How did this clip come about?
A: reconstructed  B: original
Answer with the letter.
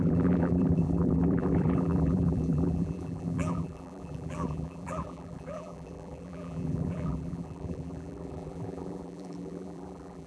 A